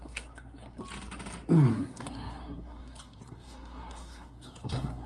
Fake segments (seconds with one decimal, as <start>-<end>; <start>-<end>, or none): 0.0-0.8; 1.7-5.1